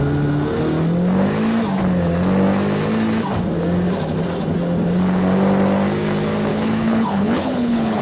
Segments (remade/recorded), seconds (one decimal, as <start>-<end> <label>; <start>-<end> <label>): 0.0-6.5 recorded; 6.5-8.0 remade